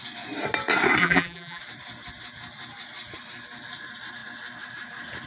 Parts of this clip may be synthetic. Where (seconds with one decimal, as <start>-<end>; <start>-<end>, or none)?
1.0-1.6